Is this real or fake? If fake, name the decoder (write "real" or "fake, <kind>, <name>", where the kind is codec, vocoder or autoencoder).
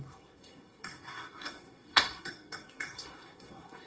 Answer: fake, codec, SNAC